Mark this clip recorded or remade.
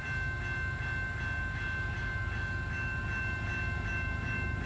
recorded